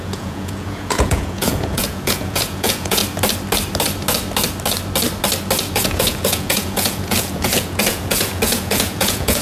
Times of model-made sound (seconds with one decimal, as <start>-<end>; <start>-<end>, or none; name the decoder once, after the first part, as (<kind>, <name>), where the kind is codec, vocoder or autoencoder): 0.0-3.0 (vocoder, Vocos); 5.7-9.4